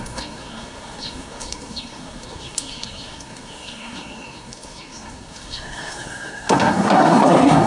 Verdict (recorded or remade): remade